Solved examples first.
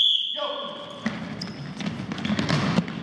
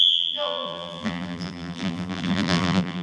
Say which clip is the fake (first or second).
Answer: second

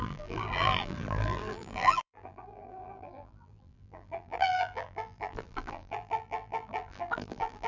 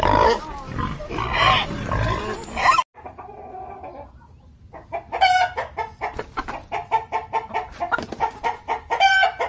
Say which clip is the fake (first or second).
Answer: first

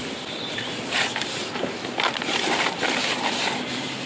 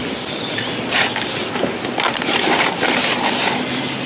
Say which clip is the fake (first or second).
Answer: first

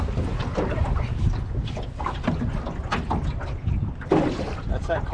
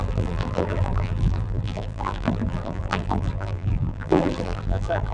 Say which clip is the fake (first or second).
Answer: second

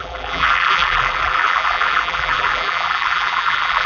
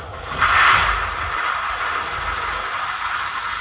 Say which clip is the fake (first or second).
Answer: first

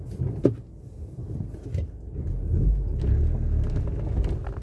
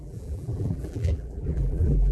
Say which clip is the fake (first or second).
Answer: second